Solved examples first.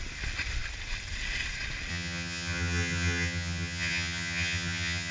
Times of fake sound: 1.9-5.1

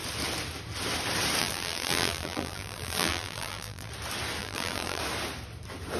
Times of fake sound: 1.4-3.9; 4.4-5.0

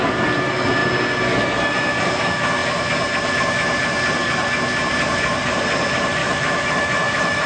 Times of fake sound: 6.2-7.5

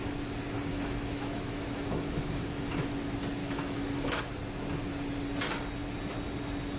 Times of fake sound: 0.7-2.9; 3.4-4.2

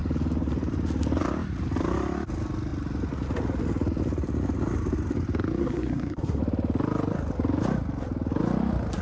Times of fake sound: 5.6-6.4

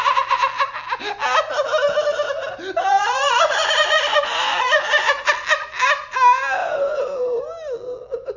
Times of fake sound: 2.9-5.3; 6.6-7.4

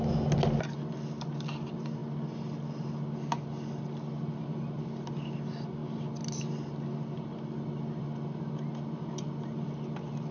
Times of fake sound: none